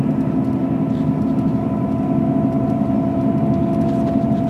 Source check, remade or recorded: recorded